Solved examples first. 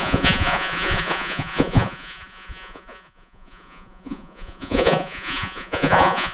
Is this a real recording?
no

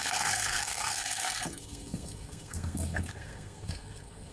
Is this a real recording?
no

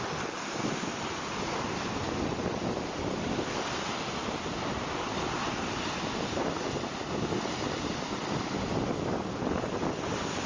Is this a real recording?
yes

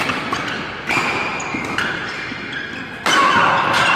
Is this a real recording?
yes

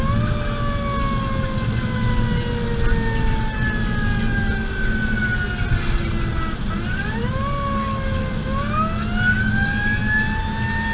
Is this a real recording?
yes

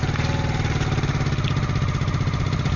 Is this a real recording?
yes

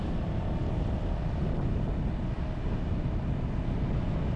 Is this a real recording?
yes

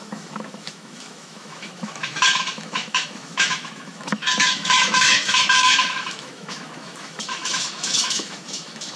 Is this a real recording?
no